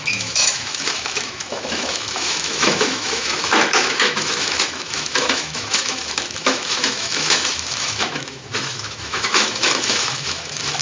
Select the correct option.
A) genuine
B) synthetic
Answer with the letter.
B